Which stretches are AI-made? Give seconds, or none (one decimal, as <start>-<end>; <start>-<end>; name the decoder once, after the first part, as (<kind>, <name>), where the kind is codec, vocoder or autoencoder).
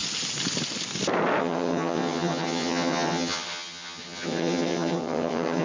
1.4-5.6 (vocoder, HiFi-GAN)